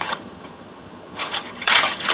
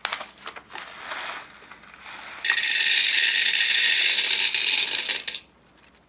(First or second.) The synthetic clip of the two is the first